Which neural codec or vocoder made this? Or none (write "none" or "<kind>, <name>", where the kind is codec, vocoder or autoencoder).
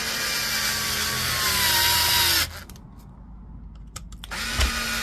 none